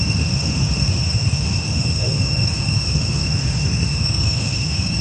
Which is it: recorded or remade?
remade